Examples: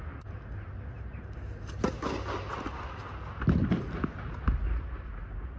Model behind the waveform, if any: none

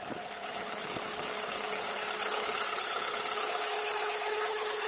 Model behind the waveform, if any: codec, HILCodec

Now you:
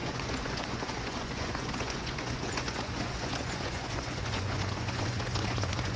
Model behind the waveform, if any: vocoder, Vocos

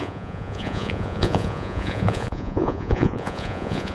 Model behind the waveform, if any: vocoder, Vocos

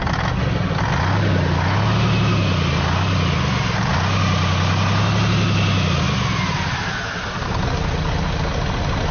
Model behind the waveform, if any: none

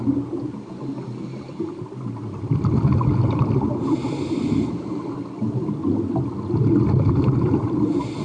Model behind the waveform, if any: none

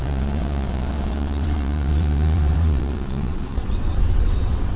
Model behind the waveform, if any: vocoder, WaveNeXt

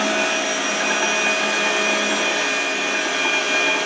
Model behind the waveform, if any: none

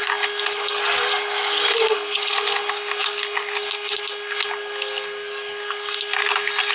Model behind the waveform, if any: none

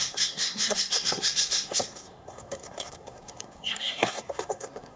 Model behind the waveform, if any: codec, SNAC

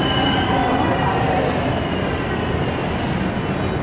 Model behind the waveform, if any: none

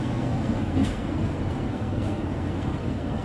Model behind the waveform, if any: codec, SNAC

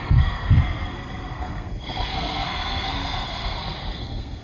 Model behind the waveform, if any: codec, SNAC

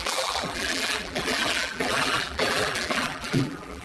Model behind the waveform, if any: vocoder, BigVGAN v2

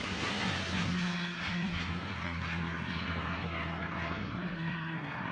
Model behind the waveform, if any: codec, SNAC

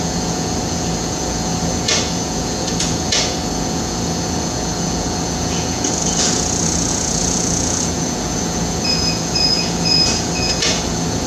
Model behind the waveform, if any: vocoder, Vocos